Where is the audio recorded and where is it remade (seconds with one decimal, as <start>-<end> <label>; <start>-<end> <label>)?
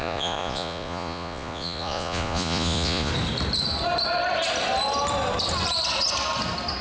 0.0-3.1 remade; 3.1-6.8 recorded